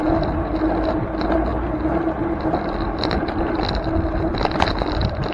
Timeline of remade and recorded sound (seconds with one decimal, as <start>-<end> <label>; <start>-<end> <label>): 0.0-5.3 recorded